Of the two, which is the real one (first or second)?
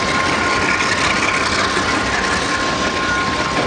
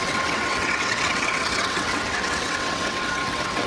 first